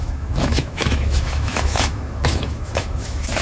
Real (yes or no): no